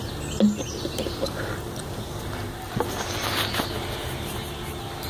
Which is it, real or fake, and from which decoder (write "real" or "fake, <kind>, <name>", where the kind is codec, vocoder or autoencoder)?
real